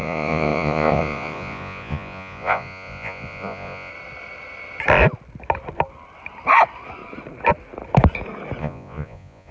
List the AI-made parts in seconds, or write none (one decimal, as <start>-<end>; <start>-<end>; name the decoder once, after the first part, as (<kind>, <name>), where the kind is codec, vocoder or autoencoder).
0.0-3.9 (vocoder, Vocos); 8.6-9.5